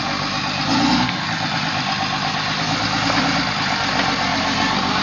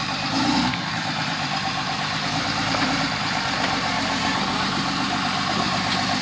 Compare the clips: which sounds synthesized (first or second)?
second